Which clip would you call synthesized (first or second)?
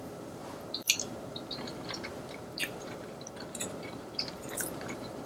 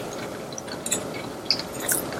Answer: first